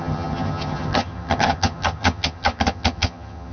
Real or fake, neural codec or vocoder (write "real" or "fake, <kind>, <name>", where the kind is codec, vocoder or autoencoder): fake, vocoder, HiFi-GAN